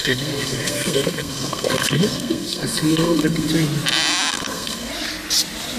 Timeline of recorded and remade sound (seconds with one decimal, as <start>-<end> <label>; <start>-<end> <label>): 0.0-3.5 remade; 3.5-4.3 recorded; 4.3-4.9 remade; 4.9-5.8 recorded